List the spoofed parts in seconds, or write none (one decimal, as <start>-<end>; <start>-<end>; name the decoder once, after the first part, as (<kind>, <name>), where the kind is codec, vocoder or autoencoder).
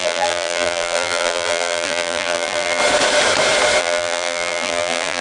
0.0-2.8 (vocoder, BigVGAN v2); 3.8-5.2